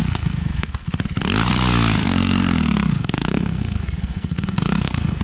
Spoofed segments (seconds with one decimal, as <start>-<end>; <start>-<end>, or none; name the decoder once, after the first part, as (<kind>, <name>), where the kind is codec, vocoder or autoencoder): 0.0-0.9 (codec, SNAC); 2.0-5.2